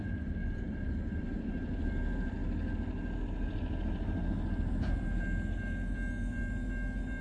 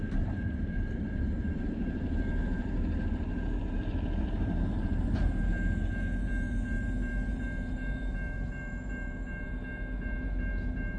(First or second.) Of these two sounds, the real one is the first